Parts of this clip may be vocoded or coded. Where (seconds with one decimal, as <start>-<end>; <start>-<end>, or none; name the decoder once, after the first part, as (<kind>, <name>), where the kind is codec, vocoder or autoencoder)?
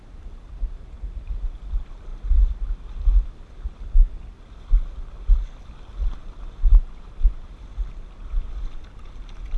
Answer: none